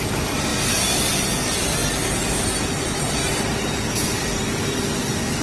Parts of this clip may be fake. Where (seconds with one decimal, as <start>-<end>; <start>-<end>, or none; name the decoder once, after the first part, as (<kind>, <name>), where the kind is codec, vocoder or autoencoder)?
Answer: 0.0-0.5 (vocoder, BigVGAN v2); 1.3-1.8; 2.7-5.4